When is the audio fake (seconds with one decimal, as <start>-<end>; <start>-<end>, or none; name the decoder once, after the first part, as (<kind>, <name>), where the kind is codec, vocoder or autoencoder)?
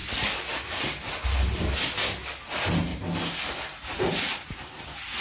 none